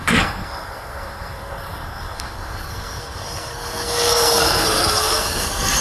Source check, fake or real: fake